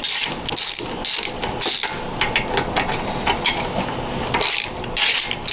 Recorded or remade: recorded